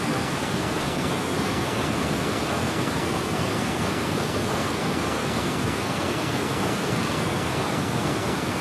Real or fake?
fake